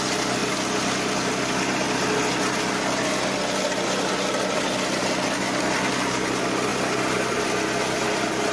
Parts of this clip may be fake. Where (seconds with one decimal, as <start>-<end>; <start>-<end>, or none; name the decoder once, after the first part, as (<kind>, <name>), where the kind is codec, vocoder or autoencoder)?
none